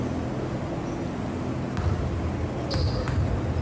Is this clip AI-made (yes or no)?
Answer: no